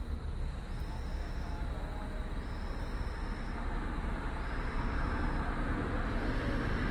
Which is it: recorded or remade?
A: recorded